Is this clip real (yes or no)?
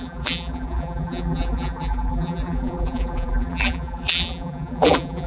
no